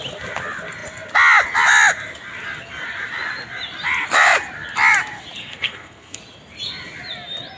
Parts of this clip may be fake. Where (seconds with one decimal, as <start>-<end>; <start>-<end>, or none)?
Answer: 5.4-6.2